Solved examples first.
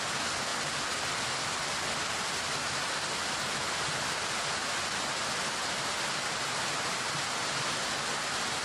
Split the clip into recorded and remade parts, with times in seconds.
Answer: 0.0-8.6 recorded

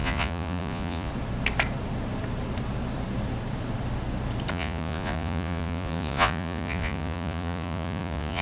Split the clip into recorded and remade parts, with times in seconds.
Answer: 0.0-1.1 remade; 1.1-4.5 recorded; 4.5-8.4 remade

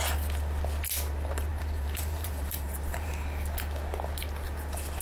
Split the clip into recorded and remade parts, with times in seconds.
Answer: 0.0-1.5 recorded; 1.5-3.1 remade; 3.1-5.0 recorded

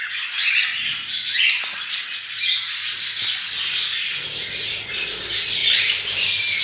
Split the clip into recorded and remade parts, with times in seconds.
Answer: 0.0-5.6 recorded; 5.6-6.6 remade